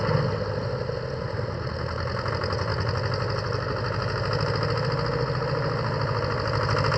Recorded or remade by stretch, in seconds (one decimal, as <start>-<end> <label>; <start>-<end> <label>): 0.0-7.0 recorded